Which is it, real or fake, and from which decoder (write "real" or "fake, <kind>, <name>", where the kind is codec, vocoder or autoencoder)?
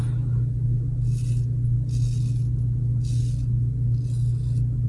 real